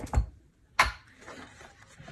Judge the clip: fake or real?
real